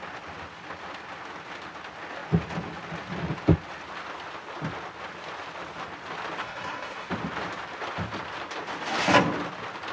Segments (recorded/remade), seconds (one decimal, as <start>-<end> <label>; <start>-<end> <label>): 0.0-6.4 recorded; 6.4-7.1 remade; 7.1-9.9 recorded